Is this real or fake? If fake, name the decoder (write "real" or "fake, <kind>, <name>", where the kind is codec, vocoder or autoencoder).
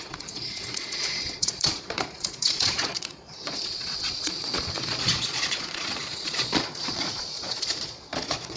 fake, vocoder, Vocos